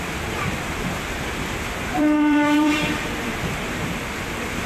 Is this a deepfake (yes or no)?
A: yes